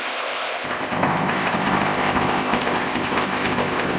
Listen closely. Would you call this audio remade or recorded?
remade